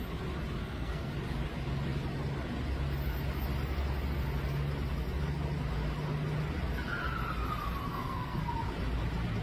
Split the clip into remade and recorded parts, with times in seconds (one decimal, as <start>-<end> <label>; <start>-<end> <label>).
0.0-0.6 recorded; 0.6-1.1 remade; 1.1-7.9 recorded; 7.9-8.5 remade; 8.5-9.4 recorded